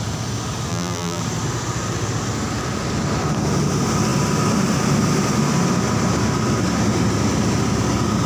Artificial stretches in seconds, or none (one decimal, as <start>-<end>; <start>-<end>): 0.7-1.2